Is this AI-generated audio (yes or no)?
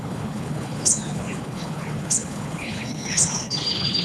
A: yes